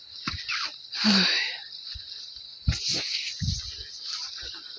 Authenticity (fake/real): real